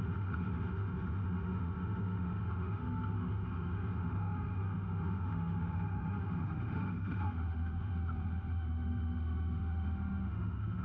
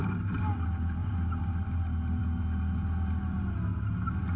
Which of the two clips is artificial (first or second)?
first